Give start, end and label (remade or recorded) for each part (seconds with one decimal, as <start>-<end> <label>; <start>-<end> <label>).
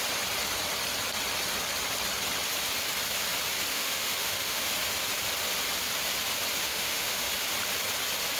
0.0-3.7 recorded; 3.7-4.6 remade; 4.6-6.6 recorded; 6.6-7.3 remade; 7.3-8.4 recorded